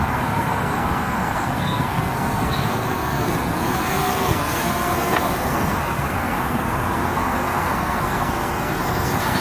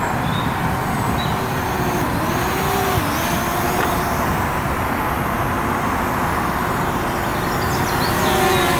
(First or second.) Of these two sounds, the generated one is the first